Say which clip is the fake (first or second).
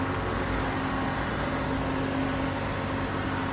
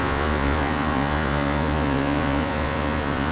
second